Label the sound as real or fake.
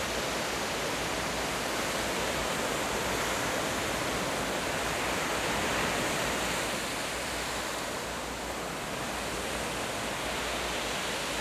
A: real